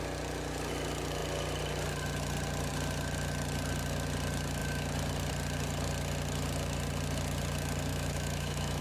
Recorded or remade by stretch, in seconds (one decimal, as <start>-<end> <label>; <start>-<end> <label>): 0.0-7.9 recorded; 7.9-8.8 remade